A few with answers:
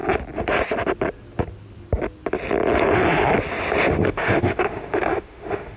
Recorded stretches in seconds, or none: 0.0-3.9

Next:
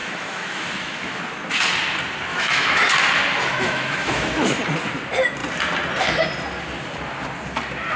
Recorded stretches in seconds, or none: 1.2-2.3; 2.9-3.5; 4.6-8.0

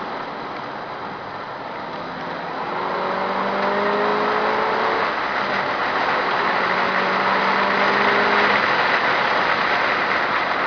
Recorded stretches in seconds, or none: 0.0-10.7

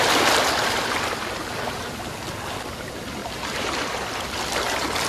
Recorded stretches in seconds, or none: 0.0-5.1